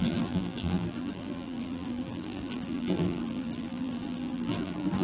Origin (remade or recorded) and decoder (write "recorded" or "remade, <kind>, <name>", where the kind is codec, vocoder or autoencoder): remade, vocoder, BigVGAN v2